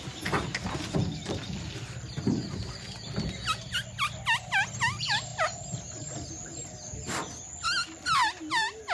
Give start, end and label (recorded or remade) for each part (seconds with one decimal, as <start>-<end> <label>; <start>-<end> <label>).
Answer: 0.0-8.9 recorded